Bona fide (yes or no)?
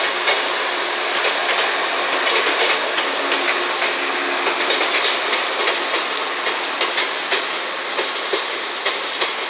yes